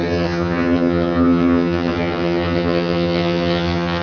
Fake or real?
fake